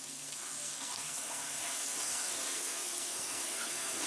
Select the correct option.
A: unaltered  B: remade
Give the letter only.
B